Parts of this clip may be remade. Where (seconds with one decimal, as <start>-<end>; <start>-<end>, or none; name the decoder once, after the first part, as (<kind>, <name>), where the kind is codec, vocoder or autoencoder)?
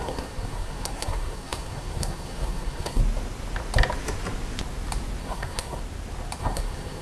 0.0-3.0 (codec, SNAC); 5.2-5.8; 6.4-7.0